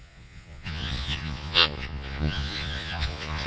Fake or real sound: fake